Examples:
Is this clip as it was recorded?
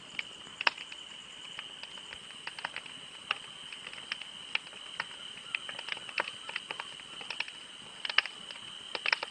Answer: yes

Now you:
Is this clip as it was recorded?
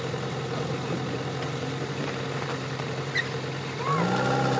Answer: yes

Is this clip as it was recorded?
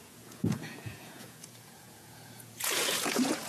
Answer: no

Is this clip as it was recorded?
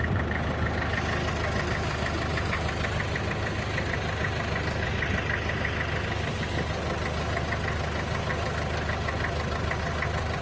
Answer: yes